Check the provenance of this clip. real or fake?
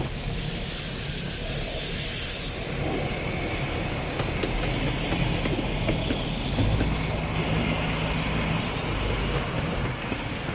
real